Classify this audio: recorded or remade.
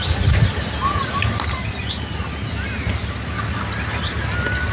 recorded